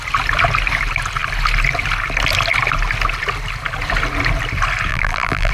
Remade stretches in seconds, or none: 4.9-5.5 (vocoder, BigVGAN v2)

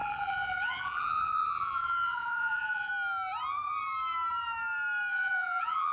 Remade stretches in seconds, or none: 0.0-2.9 (vocoder, BigVGAN v2); 5.1-5.9